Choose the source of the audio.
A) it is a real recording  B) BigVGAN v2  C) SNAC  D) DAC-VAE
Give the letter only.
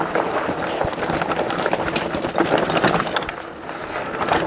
A